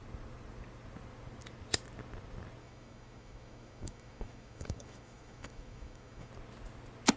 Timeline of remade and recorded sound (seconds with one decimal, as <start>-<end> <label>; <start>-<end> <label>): 0.0-2.6 recorded; 2.6-6.3 remade; 6.3-7.2 recorded